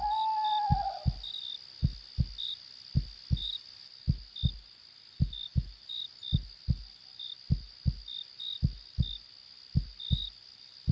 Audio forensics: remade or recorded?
recorded